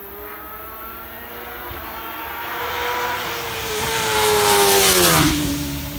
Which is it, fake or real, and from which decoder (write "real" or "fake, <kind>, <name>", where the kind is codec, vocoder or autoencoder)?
fake, vocoder, BigVGAN v2